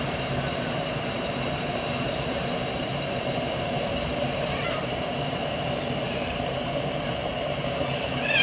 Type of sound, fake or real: fake